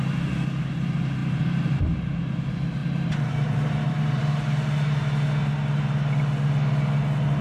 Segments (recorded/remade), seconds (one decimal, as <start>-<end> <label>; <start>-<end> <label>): 0.0-1.2 recorded; 1.2-2.2 remade; 2.2-2.8 recorded; 2.8-4.2 remade; 4.2-7.4 recorded